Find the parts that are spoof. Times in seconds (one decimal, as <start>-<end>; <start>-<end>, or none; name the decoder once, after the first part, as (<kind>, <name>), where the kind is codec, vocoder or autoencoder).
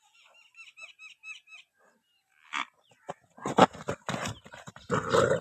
none